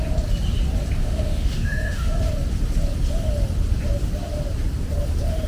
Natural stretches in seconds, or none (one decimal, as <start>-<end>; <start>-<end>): 0.0-1.0; 2.1-5.5